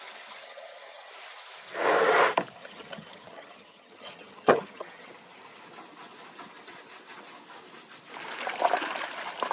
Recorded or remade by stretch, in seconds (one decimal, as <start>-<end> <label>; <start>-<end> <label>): 0.0-0.4 recorded; 0.4-1.1 remade; 1.1-2.6 recorded; 2.6-5.1 remade; 5.1-9.5 recorded